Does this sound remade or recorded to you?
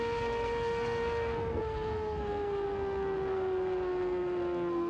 remade